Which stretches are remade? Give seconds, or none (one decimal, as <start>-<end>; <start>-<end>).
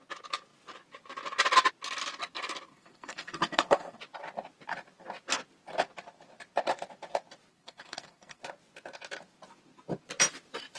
2.7-4.0; 7.5-8.4